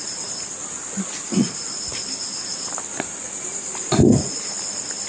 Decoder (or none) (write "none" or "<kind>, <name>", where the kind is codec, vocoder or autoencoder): none